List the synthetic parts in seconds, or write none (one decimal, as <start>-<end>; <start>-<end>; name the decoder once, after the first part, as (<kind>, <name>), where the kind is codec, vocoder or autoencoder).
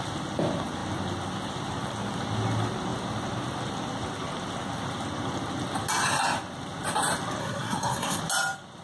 7.4-8.2 (codec, SNAC)